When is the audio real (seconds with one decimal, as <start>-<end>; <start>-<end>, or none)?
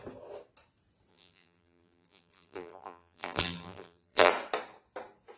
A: 0.0-1.1; 4.3-5.4